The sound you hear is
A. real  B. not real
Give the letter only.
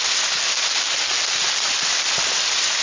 A